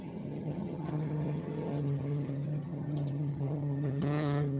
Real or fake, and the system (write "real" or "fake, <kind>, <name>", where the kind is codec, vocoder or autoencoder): fake, vocoder, HiFi-GAN